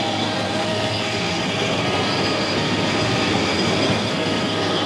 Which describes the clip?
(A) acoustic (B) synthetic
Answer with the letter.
B